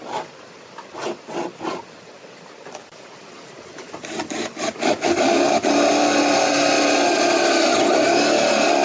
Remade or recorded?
recorded